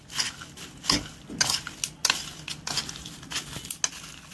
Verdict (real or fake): real